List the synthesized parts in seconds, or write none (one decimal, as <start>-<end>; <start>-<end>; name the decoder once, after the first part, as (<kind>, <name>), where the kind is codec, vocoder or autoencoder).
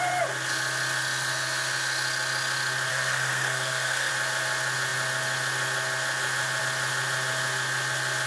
2.9-4.1 (codec, SNAC)